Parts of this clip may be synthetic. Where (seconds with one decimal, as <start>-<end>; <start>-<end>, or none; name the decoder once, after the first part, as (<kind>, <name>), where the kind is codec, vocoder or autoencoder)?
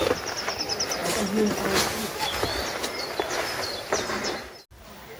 none